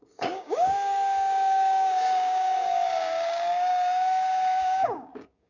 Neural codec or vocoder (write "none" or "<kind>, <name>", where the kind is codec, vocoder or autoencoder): codec, DAC